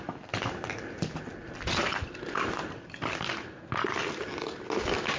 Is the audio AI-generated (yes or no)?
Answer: no